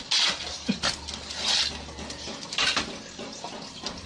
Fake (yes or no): no